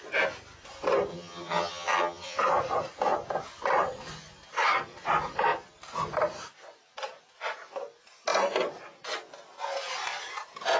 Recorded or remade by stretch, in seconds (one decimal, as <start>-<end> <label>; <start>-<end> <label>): 0.0-1.1 recorded; 1.1-2.4 remade; 2.4-10.8 recorded